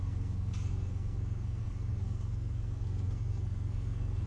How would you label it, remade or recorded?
remade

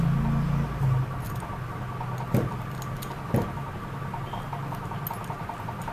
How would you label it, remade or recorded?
recorded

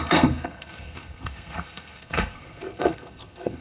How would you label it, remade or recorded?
remade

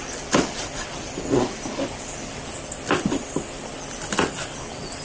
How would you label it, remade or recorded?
recorded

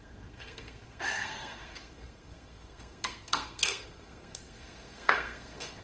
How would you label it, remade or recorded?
remade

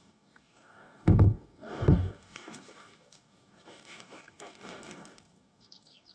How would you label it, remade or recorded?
remade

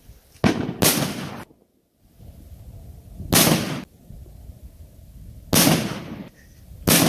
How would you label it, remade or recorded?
recorded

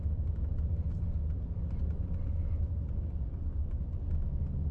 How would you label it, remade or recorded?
recorded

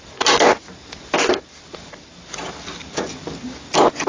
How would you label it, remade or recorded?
recorded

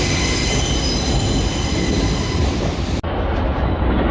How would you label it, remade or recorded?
recorded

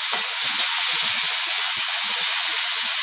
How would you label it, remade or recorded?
remade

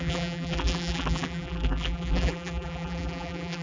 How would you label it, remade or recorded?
remade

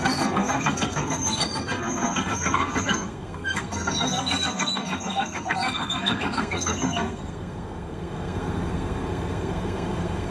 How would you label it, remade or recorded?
remade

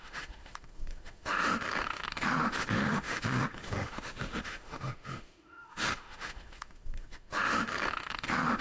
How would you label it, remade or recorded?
remade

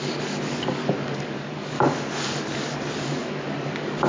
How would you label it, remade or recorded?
remade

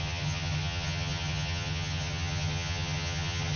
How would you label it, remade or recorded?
remade